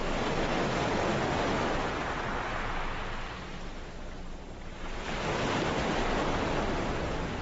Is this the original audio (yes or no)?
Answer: yes